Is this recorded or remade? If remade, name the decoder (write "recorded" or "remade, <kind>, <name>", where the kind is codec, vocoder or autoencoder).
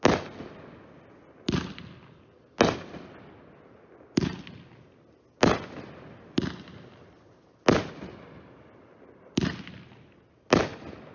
recorded